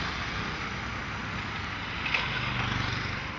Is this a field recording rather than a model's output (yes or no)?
yes